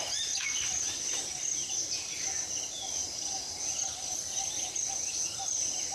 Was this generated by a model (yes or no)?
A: no